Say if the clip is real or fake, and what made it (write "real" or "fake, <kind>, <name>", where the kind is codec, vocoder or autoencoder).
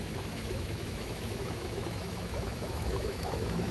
fake, autoencoder, DAC-VAE